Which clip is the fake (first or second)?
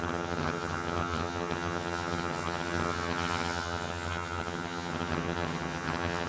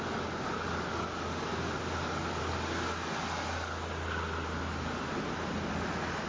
first